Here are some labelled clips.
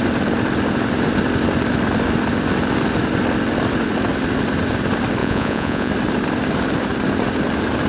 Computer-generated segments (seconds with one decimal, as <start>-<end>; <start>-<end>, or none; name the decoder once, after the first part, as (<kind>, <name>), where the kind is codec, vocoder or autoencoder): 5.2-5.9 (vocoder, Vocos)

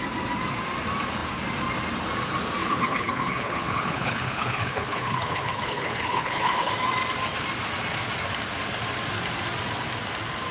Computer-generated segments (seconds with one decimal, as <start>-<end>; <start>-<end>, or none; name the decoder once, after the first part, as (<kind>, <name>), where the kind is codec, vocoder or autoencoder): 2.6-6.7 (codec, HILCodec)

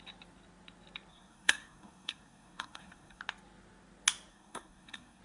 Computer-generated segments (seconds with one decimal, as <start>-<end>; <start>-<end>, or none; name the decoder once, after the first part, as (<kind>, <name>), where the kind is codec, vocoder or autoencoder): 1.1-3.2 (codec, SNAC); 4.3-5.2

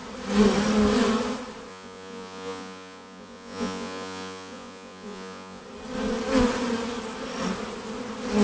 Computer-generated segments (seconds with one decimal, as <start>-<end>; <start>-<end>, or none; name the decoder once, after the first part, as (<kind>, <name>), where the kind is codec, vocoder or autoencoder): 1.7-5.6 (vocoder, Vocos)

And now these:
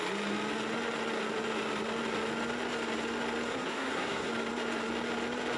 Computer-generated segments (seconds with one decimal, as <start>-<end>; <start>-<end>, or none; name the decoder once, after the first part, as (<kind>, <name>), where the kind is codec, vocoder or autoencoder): 3.5-4.3 (codec, SNAC)